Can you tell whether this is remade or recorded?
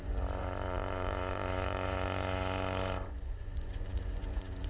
remade